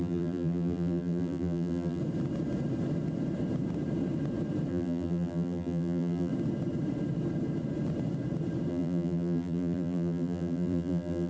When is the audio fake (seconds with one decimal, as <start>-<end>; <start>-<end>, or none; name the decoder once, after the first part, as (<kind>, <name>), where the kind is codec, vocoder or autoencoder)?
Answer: 0.0-2.0 (vocoder, BigVGAN v2); 4.7-6.3; 8.7-11.3